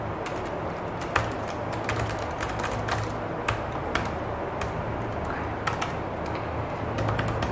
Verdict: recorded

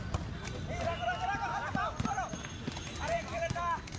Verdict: recorded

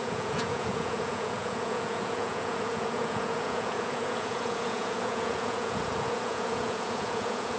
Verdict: remade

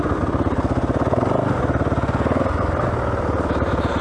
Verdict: recorded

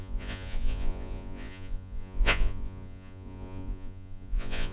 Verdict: remade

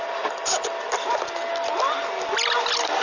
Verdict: recorded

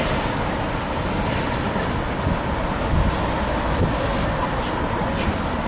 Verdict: recorded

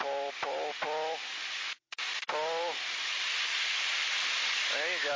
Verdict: recorded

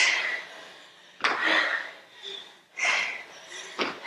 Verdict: recorded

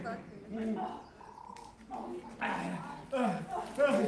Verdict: recorded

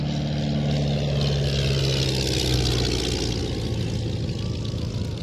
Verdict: recorded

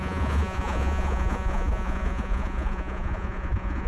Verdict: remade